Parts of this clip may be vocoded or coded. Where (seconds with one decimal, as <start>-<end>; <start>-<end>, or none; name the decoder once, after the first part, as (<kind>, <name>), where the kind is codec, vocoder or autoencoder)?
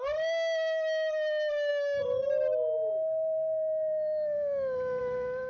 none